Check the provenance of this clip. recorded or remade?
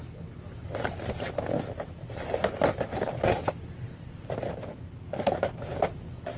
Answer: recorded